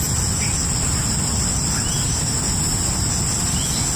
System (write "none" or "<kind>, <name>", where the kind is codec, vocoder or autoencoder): none